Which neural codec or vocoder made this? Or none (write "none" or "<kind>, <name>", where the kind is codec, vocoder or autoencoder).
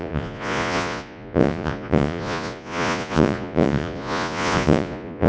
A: vocoder, Vocos